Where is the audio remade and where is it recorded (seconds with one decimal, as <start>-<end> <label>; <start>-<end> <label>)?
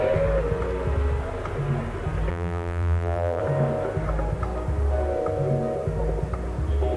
0.0-2.3 recorded; 2.3-3.4 remade; 3.4-7.0 recorded